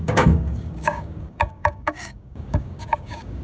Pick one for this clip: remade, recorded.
remade